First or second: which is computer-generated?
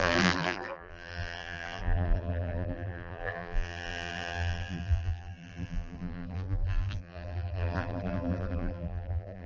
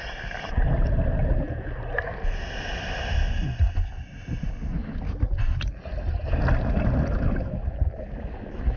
first